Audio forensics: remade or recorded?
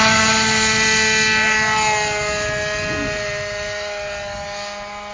recorded